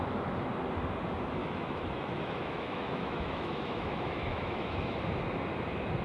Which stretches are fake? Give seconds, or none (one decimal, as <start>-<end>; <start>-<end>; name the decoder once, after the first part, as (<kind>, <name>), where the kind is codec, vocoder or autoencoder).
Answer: 1.4-5.0 (autoencoder, DAC-VAE)